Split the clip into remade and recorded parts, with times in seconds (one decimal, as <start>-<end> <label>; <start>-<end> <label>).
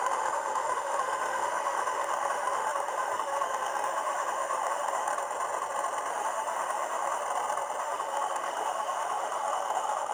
0.0-5.1 remade; 5.1-6.1 recorded; 6.1-7.2 remade; 7.2-7.8 recorded; 7.8-10.1 remade